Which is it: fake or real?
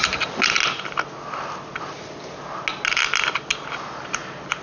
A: real